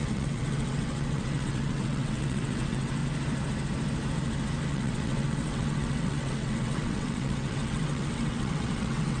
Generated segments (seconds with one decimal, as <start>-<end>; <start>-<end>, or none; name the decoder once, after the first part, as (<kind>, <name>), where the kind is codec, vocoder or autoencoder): 0.0-3.0 (vocoder, WaveNeXt); 4.7-9.2